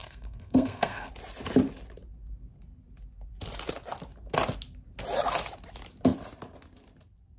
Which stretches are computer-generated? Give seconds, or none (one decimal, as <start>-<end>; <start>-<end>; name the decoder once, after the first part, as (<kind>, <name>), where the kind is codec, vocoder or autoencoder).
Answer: 0.0-1.1 (codec, SNAC)